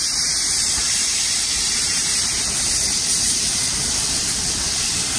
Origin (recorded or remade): remade